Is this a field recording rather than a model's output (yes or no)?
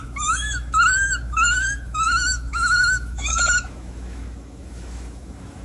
no